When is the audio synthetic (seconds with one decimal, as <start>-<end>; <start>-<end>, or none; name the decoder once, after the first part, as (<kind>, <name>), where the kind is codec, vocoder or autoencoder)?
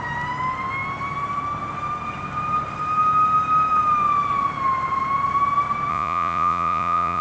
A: 5.9-7.2 (vocoder, Vocos)